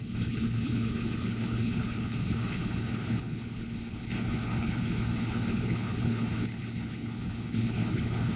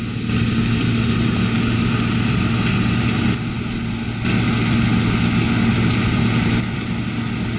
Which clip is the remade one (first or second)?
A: first